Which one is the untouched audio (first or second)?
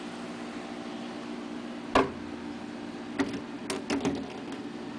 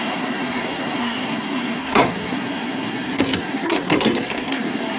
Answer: first